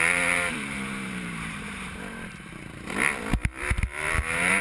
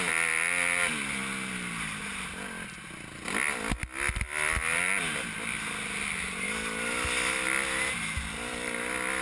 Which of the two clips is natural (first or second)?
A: second